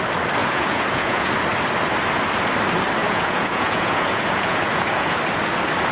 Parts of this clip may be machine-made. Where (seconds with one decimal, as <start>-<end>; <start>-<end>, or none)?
0.4-1.3; 3.0-5.2